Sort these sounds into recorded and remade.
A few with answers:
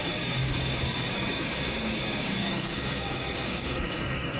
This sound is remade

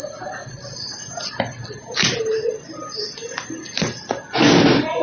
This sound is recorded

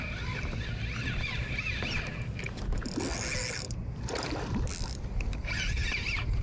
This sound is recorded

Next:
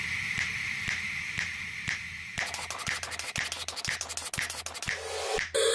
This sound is recorded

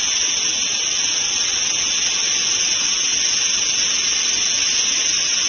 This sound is recorded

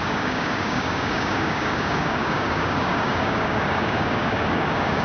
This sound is remade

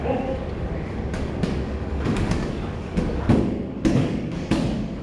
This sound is remade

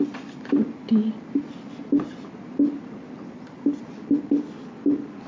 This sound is recorded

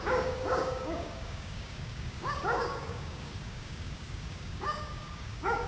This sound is remade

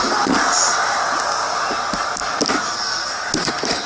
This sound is recorded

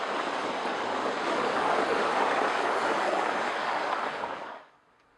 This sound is remade